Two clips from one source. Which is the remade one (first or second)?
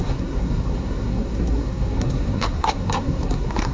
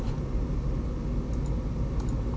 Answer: first